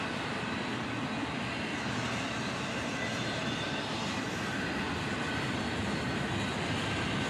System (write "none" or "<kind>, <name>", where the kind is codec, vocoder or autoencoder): none